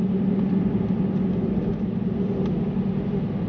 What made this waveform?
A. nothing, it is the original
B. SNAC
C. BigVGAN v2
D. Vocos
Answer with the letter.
A